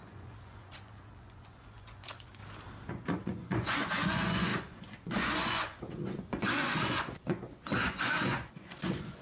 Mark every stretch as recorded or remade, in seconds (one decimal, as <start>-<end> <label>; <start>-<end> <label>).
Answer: 0.0-2.4 remade; 2.4-2.9 recorded; 2.9-9.2 remade